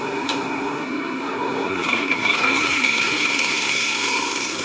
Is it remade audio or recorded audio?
remade